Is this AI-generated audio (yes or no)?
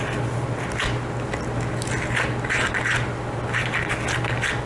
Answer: no